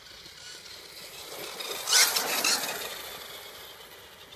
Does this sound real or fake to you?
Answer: real